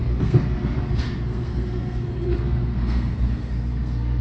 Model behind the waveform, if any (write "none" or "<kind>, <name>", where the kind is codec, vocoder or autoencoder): codec, SNAC